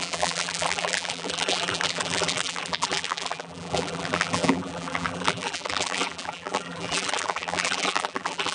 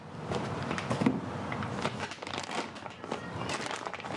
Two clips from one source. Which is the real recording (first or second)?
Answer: second